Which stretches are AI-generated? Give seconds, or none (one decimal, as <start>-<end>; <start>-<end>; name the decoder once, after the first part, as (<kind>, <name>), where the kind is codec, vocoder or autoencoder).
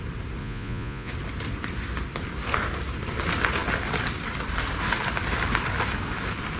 0.4-1.1 (vocoder, Vocos)